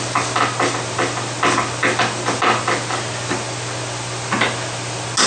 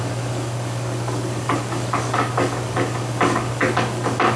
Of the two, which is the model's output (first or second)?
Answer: second